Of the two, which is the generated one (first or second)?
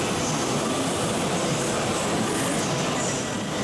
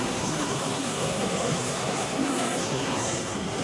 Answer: second